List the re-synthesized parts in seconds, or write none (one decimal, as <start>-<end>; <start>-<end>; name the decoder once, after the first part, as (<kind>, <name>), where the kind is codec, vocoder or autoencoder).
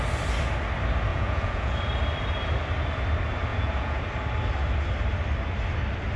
1.1-1.8 (vocoder, Vocos); 3.5-4.0